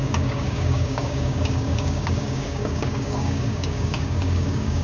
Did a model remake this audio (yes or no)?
yes